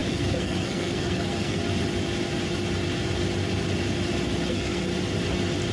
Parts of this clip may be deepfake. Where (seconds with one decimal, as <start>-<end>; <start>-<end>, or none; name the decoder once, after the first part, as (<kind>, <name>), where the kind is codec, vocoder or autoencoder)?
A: 0.0-1.6 (codec, SNAC); 4.5-4.9